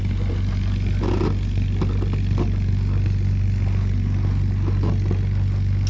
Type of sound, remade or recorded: recorded